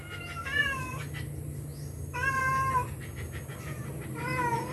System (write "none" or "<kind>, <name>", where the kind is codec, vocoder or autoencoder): none